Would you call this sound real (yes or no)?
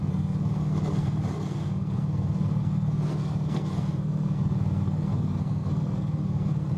no